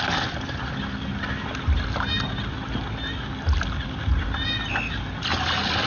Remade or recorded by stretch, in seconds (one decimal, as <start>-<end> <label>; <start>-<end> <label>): 0.0-5.9 recorded